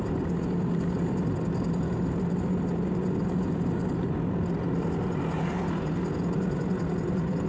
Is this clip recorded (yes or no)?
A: yes